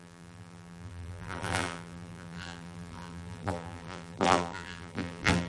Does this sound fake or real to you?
fake